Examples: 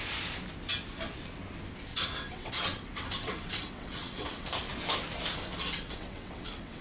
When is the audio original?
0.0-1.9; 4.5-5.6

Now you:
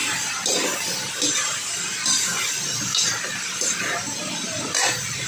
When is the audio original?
0.0-1.1; 2.3-3.8

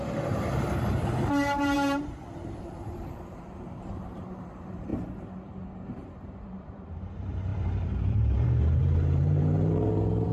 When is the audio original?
none

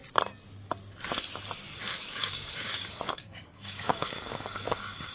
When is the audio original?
0.0-1.9

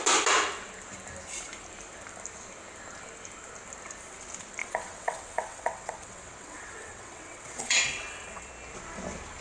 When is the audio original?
0.0-4.6; 8.5-9.4